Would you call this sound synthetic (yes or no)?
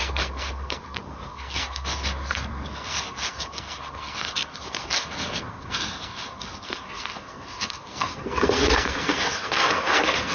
yes